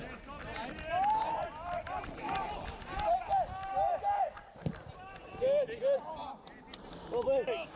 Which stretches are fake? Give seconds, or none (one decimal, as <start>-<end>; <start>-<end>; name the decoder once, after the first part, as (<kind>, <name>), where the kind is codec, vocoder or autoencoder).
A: none